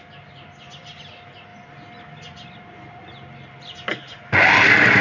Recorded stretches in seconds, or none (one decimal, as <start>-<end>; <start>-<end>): 0.0-5.0